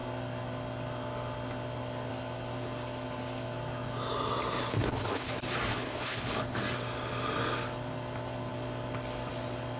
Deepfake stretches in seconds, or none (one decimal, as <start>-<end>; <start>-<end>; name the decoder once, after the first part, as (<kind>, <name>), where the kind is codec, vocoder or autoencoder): 4.7-5.3 (codec, HILCodec); 5.7-6.6